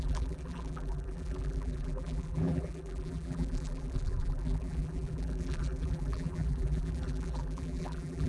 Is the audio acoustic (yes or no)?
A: no